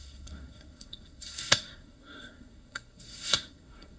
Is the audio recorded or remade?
remade